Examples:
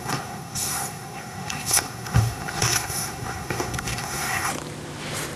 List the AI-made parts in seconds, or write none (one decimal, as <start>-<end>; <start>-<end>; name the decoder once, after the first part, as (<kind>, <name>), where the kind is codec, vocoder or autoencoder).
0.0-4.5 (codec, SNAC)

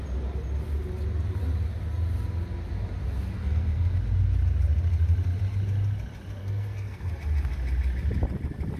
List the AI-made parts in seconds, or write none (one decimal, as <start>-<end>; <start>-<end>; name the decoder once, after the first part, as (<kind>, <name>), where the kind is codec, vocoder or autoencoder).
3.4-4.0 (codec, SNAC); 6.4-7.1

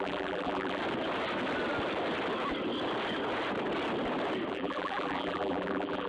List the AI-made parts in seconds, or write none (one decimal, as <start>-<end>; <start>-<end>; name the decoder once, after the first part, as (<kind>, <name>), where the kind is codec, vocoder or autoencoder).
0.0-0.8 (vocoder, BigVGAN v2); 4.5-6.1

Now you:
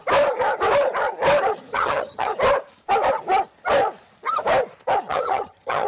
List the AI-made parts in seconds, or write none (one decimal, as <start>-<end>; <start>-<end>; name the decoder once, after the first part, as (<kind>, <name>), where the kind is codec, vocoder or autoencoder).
1.7-2.3 (vocoder, HiFi-GAN); 5.1-5.9

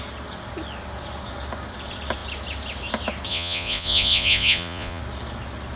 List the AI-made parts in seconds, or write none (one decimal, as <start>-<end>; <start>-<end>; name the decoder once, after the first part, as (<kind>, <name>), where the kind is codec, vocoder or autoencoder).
3.3-5.0 (vocoder, Vocos)

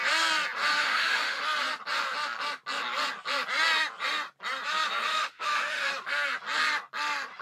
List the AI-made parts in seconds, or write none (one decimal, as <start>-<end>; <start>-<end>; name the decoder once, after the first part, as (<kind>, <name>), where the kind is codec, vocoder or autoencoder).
0.8-1.4 (autoencoder, DAC-VAE); 5.1-5.9

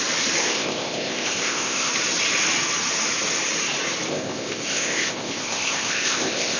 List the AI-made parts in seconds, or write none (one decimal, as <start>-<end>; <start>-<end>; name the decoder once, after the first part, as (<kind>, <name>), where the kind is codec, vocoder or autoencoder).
0.4-1.9 (codec, ZipCodec); 4.1-6.6